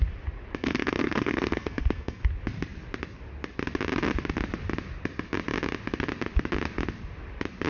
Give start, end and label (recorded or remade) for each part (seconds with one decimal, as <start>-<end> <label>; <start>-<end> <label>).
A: 0.0-0.6 recorded; 0.6-2.2 remade; 2.2-7.7 recorded